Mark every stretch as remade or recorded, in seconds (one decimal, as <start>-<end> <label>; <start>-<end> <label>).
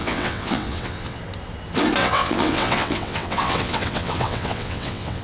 0.0-1.2 remade; 1.2-2.0 recorded; 2.0-5.2 remade